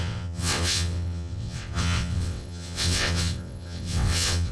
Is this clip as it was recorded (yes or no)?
no